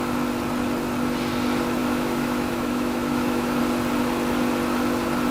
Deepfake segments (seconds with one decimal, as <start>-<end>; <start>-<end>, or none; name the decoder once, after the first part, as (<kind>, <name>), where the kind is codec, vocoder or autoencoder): 1.8-3.6 (autoencoder, DAC-VAE)